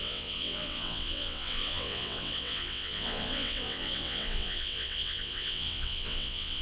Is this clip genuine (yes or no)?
no